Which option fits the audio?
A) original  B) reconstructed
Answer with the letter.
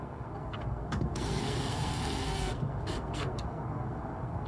B